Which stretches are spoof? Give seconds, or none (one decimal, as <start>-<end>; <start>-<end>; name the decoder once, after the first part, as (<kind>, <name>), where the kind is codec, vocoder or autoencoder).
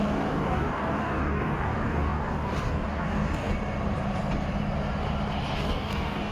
0.0-3.5 (codec, DAC); 5.6-6.3